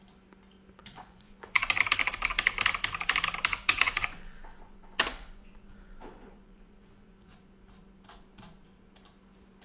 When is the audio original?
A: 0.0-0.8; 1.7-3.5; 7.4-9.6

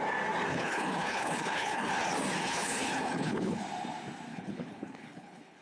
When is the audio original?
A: 0.0-0.5; 1.9-2.4; 3.6-4.3

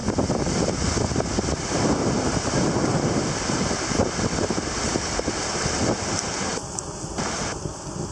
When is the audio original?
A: 0.0-8.1

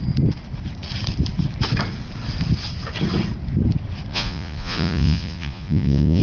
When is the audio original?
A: 0.0-4.1